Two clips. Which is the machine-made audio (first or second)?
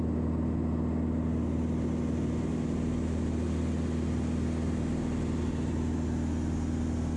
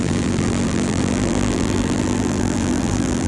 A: second